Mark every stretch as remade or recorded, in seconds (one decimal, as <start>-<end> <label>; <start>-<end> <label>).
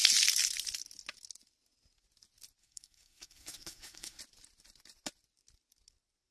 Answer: 0.0-2.6 recorded; 2.6-4.2 remade; 4.2-6.3 recorded